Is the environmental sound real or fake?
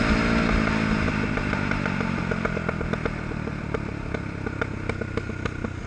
real